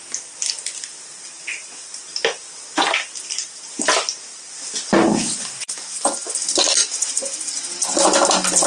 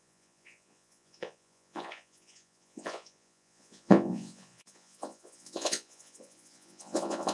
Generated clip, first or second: second